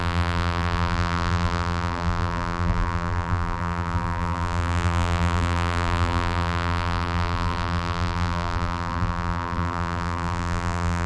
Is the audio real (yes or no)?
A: no